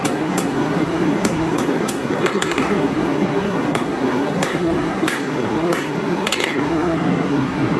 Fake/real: fake